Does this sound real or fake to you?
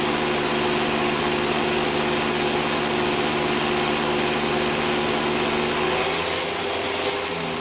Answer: real